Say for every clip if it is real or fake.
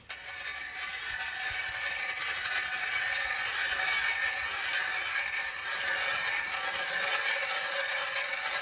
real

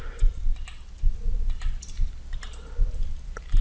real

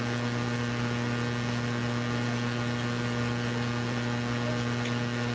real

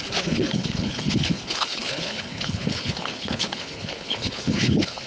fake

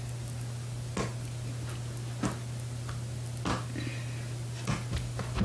real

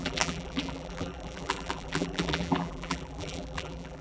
fake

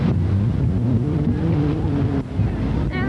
real